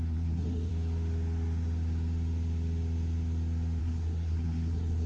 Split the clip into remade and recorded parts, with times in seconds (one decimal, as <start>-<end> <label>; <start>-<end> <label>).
0.0-0.7 remade; 0.7-3.8 recorded; 3.8-5.1 remade